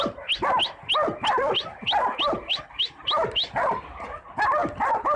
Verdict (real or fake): real